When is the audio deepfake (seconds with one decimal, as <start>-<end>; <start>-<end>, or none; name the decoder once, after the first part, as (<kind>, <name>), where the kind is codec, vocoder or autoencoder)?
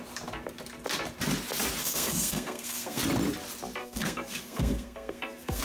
1.8-3.0 (codec, SNAC); 3.8-5.6